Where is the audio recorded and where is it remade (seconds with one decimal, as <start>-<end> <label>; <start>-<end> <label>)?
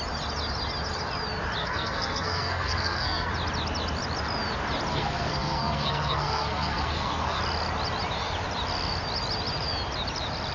0.0-1.6 recorded; 1.6-3.3 remade; 3.3-4.9 recorded; 4.9-7.4 remade; 7.4-10.5 recorded